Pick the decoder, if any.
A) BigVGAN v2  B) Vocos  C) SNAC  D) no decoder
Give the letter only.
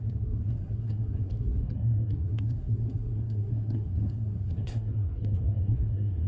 C